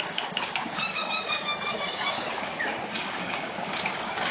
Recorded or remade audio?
remade